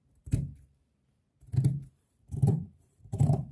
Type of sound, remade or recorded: remade